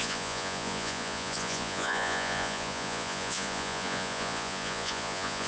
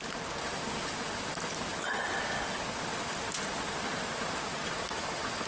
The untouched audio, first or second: second